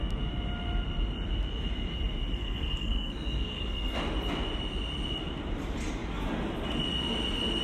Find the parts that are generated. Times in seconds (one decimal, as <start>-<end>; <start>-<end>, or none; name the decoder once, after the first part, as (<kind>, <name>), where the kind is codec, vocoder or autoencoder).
2.4-4.0 (codec, SNAC)